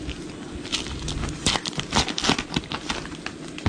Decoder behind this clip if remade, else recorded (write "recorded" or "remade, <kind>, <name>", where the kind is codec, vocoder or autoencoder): recorded